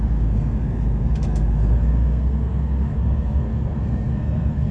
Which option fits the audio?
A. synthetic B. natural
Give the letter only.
A